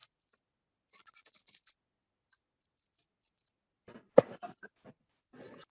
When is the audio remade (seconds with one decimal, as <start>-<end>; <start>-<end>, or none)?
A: none